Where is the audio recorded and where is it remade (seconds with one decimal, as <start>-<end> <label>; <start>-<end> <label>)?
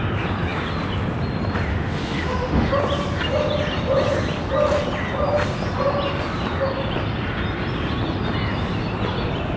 0.0-1.7 recorded; 1.7-2.7 remade; 2.7-9.6 recorded